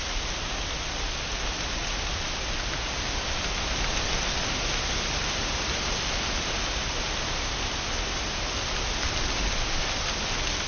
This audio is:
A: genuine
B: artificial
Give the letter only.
A